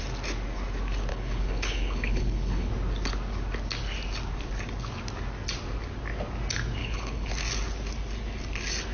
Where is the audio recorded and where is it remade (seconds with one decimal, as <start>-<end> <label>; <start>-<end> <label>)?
0.0-1.1 recorded; 1.1-2.7 remade; 2.7-6.8 recorded; 6.8-7.3 remade; 7.3-8.9 recorded